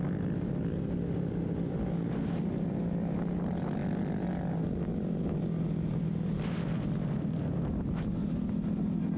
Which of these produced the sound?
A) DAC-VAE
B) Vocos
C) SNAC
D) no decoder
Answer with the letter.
D